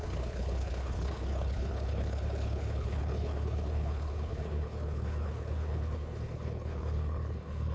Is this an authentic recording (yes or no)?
no